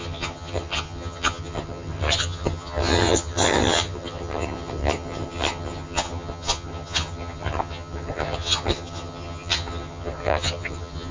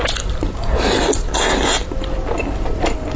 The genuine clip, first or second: second